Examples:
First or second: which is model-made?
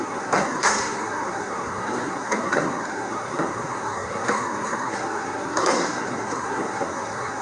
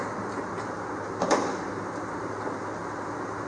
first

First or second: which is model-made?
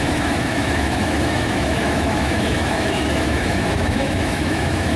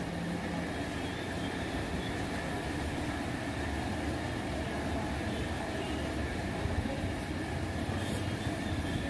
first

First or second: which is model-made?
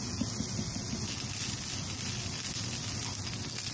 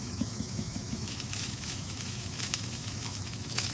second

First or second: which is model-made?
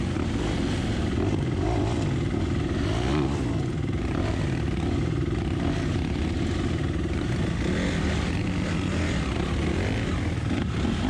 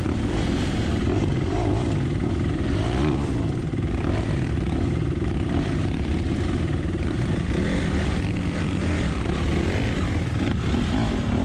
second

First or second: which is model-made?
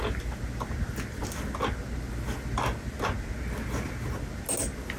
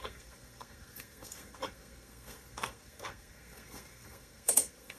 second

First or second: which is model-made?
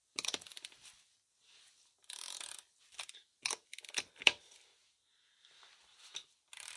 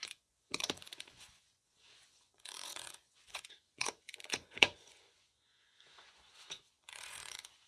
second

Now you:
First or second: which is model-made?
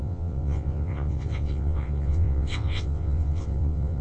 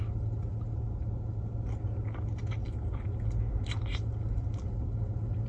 first